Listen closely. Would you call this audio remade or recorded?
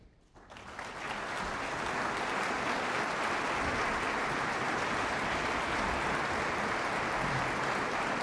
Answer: recorded